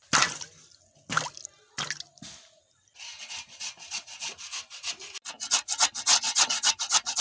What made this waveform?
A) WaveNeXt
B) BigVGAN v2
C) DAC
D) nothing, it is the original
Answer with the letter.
D